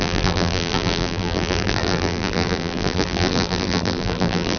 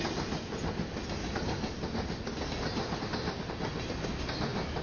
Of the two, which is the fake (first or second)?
first